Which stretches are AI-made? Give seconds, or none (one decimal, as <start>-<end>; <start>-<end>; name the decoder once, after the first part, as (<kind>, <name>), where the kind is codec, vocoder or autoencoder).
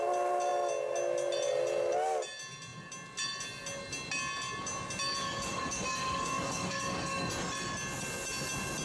5.2-7.3 (codec, DAC)